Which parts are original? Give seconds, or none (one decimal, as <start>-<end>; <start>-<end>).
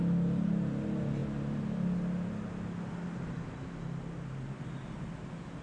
0.0-5.6